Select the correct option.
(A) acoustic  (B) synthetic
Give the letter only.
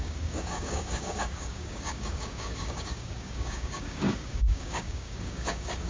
B